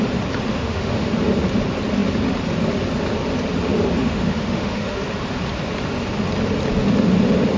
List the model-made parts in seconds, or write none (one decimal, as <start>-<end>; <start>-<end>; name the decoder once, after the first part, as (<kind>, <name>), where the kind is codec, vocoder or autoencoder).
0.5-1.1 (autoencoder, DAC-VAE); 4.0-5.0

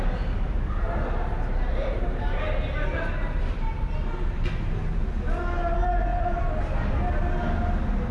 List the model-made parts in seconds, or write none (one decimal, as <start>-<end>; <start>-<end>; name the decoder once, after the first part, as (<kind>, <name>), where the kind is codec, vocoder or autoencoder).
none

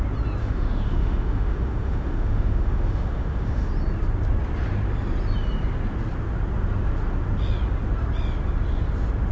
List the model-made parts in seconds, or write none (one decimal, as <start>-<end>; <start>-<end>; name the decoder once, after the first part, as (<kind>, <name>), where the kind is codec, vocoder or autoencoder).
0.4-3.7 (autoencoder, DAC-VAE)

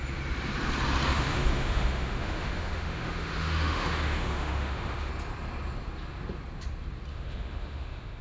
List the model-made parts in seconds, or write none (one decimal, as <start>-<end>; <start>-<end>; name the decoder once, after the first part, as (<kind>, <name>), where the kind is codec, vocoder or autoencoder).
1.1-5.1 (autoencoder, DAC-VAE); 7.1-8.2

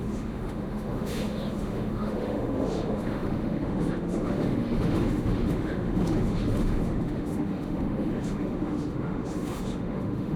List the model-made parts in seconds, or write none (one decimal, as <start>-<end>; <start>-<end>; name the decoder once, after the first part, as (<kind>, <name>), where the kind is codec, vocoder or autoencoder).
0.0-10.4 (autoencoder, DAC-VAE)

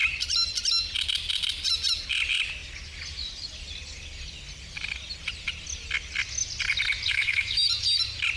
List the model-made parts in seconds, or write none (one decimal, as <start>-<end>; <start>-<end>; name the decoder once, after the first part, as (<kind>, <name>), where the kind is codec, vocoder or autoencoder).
7.1-7.6 (autoencoder, DAC-VAE)

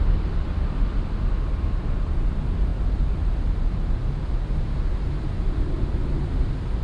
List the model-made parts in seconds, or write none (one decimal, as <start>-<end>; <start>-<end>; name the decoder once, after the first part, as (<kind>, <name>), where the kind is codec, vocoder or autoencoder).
none